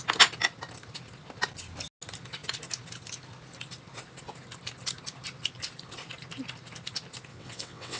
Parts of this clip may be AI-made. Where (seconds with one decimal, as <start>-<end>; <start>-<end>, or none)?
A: 7.3-8.0